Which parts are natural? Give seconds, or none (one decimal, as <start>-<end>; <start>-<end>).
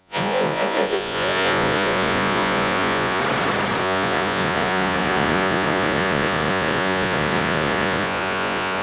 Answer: 3.2-3.8